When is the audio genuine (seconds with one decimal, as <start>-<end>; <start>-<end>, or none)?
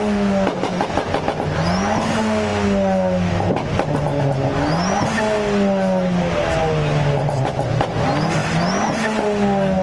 0.0-6.6; 7.7-9.8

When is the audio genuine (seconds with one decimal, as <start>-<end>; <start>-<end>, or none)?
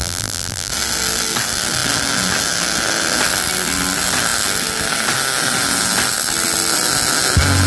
0.7-7.7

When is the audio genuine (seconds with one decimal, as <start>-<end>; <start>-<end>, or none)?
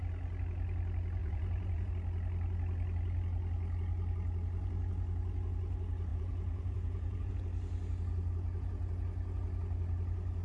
0.0-1.2; 1.9-6.1; 7.3-10.4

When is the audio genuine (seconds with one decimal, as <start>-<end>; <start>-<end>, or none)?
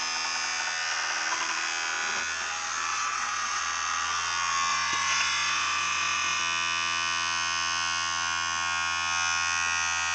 0.0-2.9; 3.6-4.7; 6.4-10.1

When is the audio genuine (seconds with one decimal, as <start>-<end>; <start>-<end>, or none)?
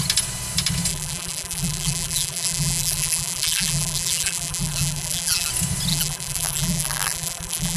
0.0-0.9; 5.5-5.9